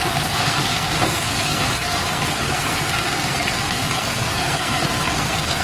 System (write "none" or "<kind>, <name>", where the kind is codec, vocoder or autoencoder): codec, SNAC